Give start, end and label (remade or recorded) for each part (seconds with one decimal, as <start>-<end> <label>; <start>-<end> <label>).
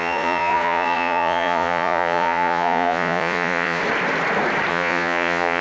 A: 0.0-3.8 remade; 3.8-4.7 recorded; 4.7-5.6 remade